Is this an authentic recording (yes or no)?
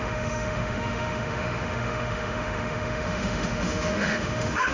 no